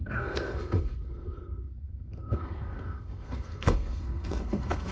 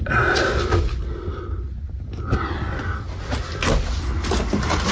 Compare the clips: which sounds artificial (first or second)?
first